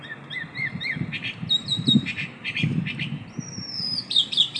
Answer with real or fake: fake